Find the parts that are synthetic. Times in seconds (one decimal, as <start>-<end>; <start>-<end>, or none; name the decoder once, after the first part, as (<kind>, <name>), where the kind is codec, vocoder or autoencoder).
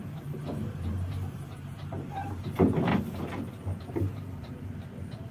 0.0-2.9 (vocoder, BigVGAN v2); 3.9-5.3